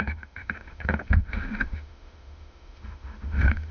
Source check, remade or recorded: remade